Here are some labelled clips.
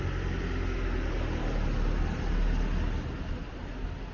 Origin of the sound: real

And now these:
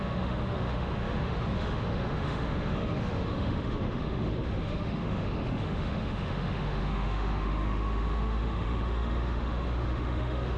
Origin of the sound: fake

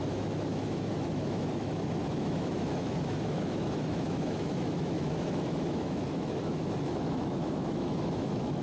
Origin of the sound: fake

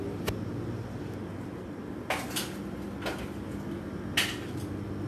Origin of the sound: real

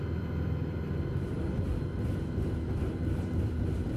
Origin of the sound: real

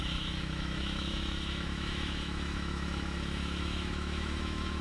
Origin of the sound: fake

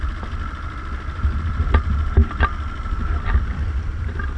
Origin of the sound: real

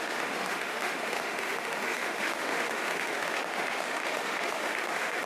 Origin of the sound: fake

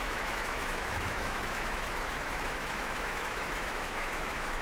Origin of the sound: fake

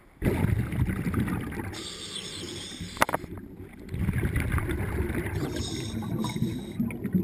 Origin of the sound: real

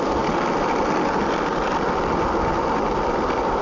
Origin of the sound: real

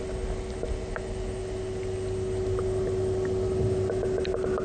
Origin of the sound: real